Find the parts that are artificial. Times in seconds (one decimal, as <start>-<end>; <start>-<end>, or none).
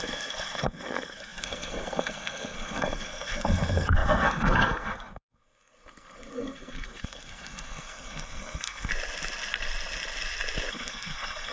0.0-8.9; 10.7-11.5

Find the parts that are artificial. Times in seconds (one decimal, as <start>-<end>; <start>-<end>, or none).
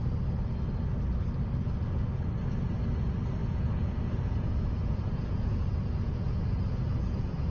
3.4-7.5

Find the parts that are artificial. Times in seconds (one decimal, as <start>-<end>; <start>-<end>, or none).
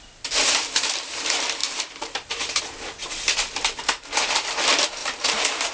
1.6-2.6; 5.0-5.7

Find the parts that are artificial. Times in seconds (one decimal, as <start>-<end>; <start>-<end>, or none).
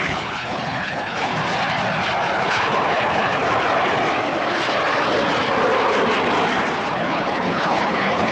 0.0-1.3; 2.4-3.4; 6.9-8.3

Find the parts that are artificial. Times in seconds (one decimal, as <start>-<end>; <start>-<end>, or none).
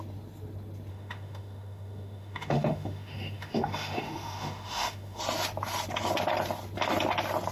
0.9-5.2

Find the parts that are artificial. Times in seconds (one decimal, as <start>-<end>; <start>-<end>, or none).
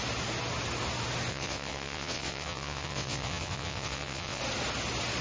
1.3-4.4